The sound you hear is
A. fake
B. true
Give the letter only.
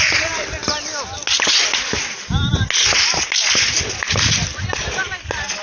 B